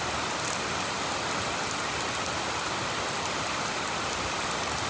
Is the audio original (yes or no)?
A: yes